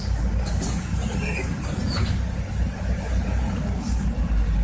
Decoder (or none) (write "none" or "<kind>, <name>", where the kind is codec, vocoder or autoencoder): none